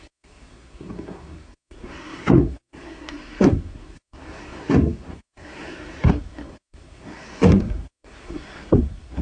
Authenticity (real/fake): fake